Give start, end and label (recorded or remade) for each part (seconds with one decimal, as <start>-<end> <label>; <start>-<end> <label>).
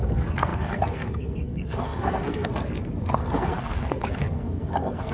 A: 0.0-5.1 remade